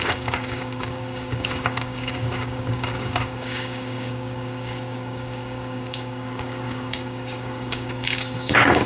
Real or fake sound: fake